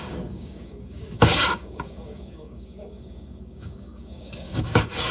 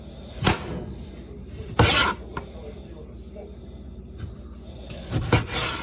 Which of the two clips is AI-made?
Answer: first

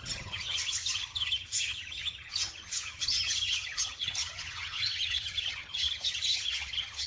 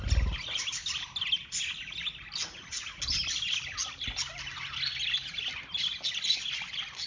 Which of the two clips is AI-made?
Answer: first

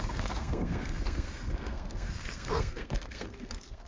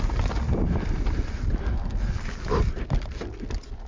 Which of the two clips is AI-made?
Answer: first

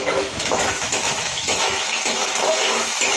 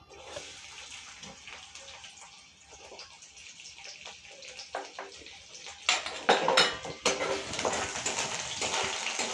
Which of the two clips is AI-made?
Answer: first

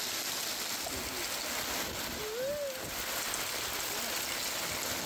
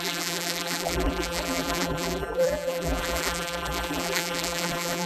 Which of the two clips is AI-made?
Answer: second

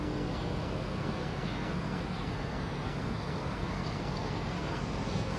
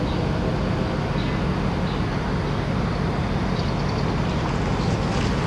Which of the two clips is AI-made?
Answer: first